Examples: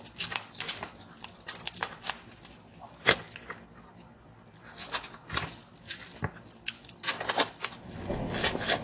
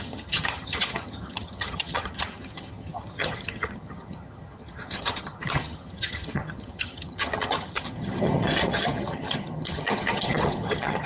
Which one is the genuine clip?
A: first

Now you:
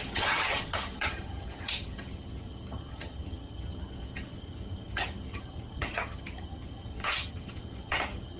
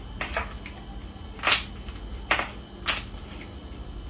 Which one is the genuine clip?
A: second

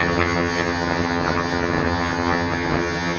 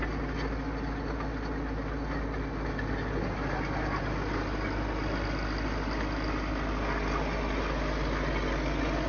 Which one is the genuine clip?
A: second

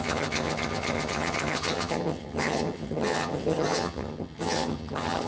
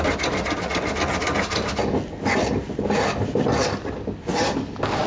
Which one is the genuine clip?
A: second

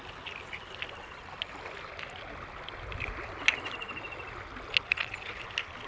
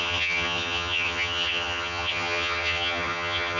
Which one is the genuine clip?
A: first